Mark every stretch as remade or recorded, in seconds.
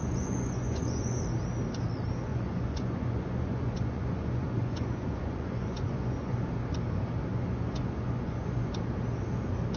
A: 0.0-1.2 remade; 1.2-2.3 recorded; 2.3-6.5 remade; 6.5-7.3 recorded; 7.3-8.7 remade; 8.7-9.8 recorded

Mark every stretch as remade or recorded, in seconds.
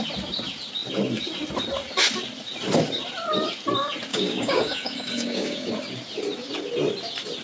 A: 0.0-4.1 recorded; 4.1-5.7 remade; 5.7-7.4 recorded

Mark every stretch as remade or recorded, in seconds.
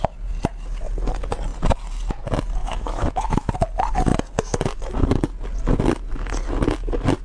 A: 0.0-2.6 recorded; 2.6-3.5 remade; 3.5-7.2 recorded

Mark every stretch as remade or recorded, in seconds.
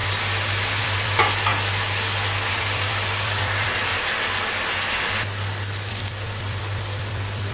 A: 0.0-0.8 recorded; 0.8-1.5 remade; 1.5-2.5 recorded; 2.5-3.9 remade; 3.9-5.9 recorded; 5.9-7.5 remade